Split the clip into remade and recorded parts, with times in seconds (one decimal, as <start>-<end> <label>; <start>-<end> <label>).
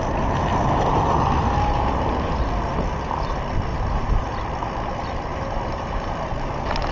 0.0-3.7 recorded; 3.7-4.3 remade; 4.3-5.3 recorded; 5.3-6.1 remade; 6.1-6.9 recorded